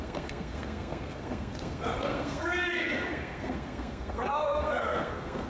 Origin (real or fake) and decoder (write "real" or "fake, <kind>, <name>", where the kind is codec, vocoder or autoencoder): fake, codec, SNAC